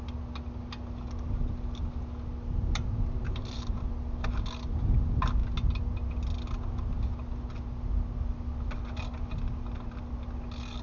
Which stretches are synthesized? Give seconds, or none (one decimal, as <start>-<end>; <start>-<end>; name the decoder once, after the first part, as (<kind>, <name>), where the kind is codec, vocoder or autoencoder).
2.6-3.9 (vocoder, BigVGAN v2)

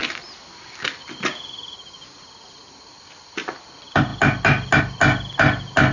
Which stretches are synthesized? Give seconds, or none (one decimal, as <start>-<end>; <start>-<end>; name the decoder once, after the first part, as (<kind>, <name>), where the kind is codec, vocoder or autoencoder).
none

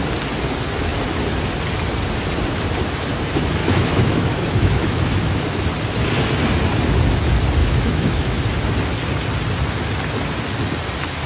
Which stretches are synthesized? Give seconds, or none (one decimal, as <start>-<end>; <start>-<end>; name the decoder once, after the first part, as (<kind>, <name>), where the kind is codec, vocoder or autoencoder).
3.6-5.6 (autoencoder, DAC-VAE); 7.6-8.4

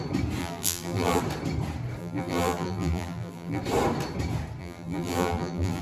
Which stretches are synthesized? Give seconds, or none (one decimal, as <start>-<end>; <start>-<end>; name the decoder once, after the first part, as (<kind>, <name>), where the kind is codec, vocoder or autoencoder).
0.4-1.2 (vocoder, BigVGAN v2); 2.0-3.6; 4.6-5.8

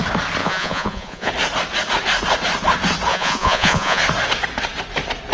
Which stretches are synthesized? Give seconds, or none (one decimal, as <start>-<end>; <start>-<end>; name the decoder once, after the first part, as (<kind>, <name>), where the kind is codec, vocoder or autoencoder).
0.4-1.3 (vocoder, Vocos); 3.1-4.0

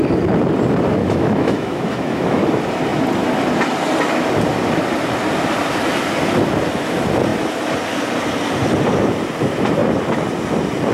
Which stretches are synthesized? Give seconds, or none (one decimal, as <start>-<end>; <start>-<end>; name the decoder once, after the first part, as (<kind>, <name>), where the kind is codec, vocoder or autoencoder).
1.0-2.4 (autoencoder, DAC-VAE)

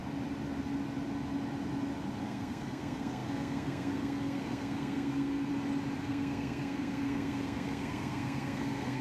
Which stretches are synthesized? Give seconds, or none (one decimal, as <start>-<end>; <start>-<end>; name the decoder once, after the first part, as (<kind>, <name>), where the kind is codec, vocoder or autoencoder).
2.2-5.5 (codec, SNAC); 6.0-9.0

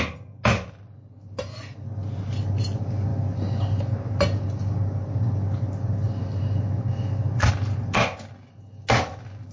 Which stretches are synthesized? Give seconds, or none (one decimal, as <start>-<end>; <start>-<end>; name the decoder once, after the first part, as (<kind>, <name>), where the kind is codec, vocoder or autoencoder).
none